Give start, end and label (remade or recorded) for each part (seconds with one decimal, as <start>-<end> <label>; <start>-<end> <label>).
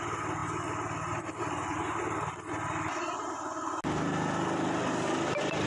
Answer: 0.0-5.7 recorded